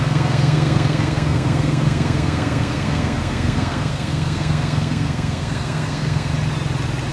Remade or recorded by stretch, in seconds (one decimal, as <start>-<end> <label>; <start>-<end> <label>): 0.0-6.3 remade; 6.3-7.1 recorded